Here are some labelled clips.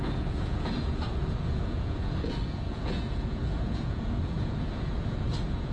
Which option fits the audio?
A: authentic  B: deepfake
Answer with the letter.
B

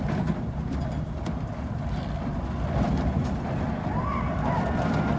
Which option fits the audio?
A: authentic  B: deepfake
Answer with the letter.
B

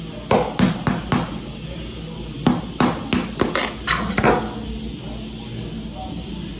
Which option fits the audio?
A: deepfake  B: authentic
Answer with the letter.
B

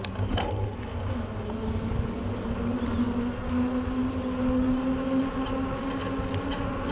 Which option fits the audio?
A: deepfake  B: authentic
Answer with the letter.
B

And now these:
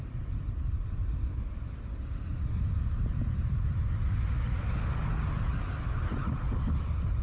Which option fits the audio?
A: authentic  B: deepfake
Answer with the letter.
A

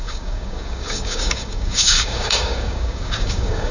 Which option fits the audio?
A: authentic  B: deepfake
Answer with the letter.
B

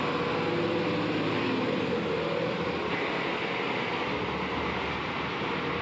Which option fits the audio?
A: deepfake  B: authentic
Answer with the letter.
B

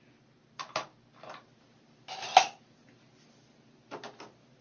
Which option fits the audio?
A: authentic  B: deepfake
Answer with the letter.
A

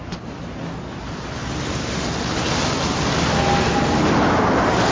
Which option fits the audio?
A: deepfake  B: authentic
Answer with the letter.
B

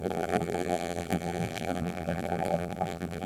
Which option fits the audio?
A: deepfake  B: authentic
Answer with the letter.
A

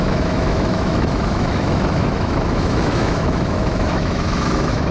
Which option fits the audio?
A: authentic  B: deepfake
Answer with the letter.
B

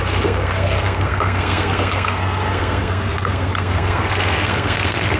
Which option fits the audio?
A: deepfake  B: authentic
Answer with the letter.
A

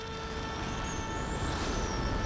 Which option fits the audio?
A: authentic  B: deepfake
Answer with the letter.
A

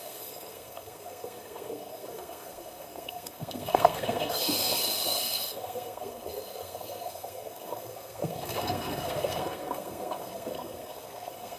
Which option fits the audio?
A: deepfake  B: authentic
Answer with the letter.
A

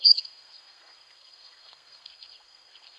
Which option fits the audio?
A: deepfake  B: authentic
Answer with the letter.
A